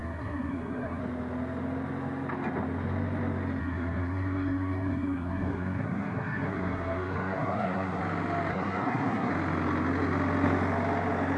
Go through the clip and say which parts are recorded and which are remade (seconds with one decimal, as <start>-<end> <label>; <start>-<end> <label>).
0.0-1.0 remade; 1.0-3.6 recorded; 3.6-8.0 remade; 8.0-8.5 recorded; 8.5-9.3 remade; 9.3-11.4 recorded